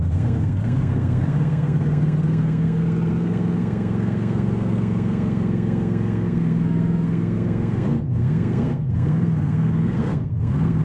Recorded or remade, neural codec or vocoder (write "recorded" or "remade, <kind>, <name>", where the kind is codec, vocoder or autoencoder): remade, codec, SNAC